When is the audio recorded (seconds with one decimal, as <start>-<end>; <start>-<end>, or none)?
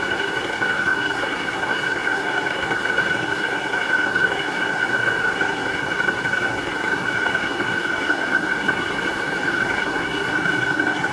none